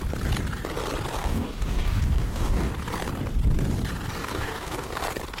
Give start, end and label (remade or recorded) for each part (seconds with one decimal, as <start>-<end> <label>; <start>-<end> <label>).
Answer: 0.0-1.2 recorded; 1.2-2.7 remade; 2.7-4.2 recorded; 4.2-5.0 remade; 5.0-5.4 recorded

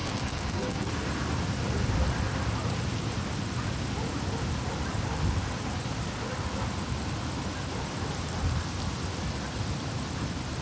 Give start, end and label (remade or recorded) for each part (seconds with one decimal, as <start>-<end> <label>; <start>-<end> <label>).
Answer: 0.0-0.9 remade; 0.9-10.6 recorded

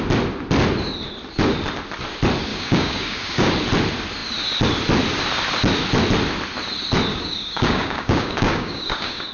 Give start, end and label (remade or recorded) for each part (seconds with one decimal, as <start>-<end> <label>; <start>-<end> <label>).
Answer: 0.0-2.5 recorded; 2.5-3.5 remade; 3.5-7.1 recorded; 7.1-9.3 remade

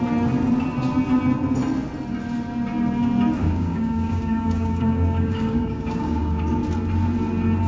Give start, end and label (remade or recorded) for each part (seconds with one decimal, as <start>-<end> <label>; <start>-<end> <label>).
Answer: 0.0-3.4 recorded; 3.4-6.5 remade; 6.5-7.7 recorded

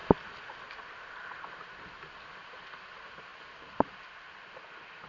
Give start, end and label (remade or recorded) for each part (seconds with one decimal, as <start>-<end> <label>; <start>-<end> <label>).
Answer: 0.0-5.1 recorded

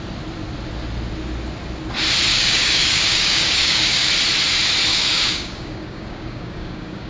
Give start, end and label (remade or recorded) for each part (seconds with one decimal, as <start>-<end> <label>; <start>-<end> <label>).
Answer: 0.0-2.3 recorded; 2.3-4.1 remade; 4.1-4.9 recorded; 4.9-7.1 remade

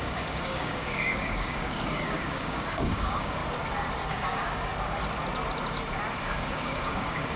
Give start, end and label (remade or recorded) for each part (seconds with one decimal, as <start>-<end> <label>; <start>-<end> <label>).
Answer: 0.0-3.4 remade; 3.4-4.1 recorded; 4.1-4.7 remade; 4.7-6.2 recorded; 6.2-7.4 remade